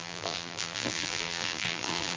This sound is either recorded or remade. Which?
remade